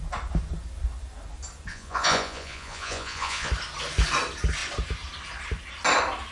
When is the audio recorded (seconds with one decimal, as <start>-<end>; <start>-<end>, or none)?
0.0-1.7; 3.5-6.3